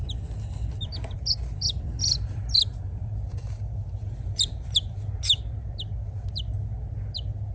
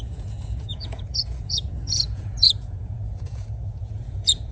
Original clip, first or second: first